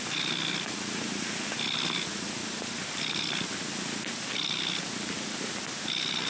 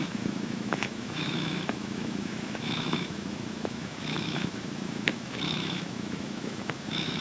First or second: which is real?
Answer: first